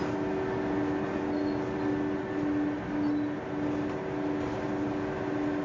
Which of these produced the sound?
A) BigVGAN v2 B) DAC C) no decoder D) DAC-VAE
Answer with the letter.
C